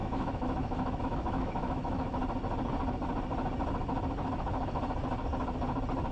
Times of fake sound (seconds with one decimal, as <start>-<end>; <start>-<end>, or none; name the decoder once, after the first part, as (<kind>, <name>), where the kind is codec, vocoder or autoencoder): 0.0-2.2 (autoencoder, DAC-VAE)